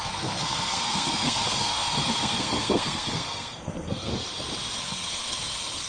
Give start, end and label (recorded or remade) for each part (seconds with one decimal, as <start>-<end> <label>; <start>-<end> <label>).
0.0-4.1 remade; 4.1-4.8 recorded; 4.8-5.9 remade